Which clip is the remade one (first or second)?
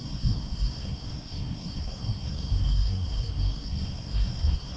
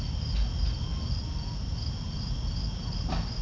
first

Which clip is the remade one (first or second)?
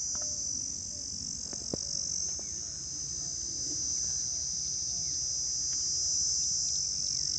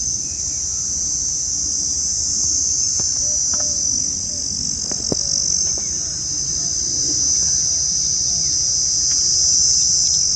second